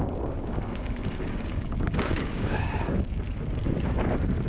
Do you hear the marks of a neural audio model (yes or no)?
yes